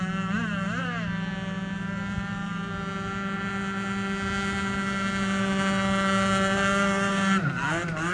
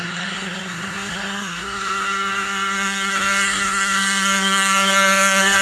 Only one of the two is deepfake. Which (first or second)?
second